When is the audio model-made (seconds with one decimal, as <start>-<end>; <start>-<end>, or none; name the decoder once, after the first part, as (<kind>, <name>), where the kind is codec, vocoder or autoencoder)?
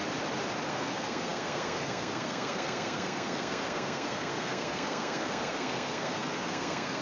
0.7-7.0 (codec, SNAC)